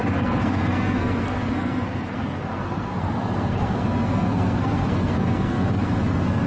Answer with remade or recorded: remade